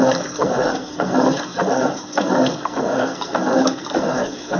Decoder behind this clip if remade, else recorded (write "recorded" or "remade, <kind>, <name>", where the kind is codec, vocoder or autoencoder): remade, codec, SNAC